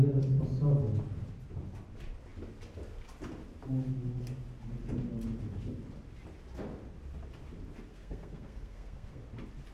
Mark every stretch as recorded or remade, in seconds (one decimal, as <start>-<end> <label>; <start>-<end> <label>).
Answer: 0.0-7.9 recorded; 7.9-9.2 remade; 9.2-9.7 recorded